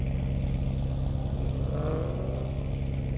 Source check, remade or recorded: recorded